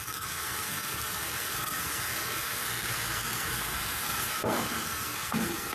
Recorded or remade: remade